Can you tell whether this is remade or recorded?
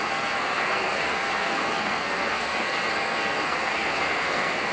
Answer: remade